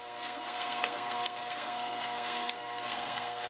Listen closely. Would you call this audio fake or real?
fake